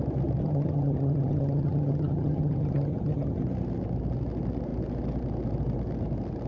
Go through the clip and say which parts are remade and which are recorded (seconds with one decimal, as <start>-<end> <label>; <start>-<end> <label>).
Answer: 0.0-0.4 recorded; 0.4-3.4 remade; 3.4-6.5 recorded

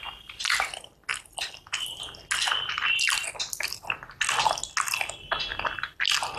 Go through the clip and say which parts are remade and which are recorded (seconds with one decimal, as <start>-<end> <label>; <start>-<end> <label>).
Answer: 0.0-5.5 recorded; 5.5-6.0 remade; 6.0-6.4 recorded